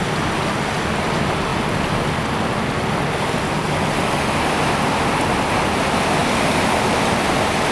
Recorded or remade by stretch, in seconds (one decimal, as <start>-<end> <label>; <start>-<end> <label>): 0.0-6.2 recorded; 6.2-7.1 remade; 7.1-7.7 recorded